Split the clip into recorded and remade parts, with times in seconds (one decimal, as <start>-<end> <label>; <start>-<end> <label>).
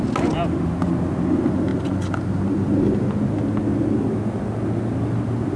0.0-5.6 recorded